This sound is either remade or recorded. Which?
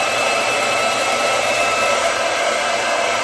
remade